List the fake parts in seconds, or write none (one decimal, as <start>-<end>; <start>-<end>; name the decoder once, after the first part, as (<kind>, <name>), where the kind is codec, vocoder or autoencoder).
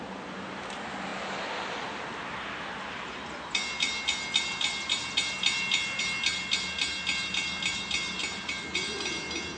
none